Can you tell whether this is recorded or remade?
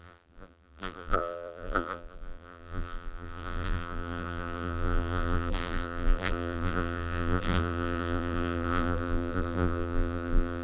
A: remade